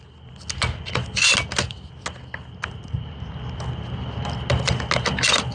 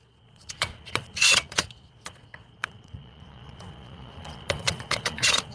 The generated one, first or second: second